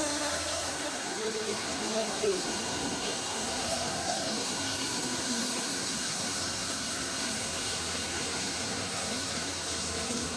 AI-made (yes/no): yes